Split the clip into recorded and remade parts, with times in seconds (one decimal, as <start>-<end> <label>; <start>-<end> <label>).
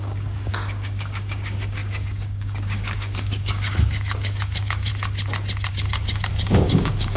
0.0-4.9 remade; 4.9-5.7 recorded; 5.7-7.2 remade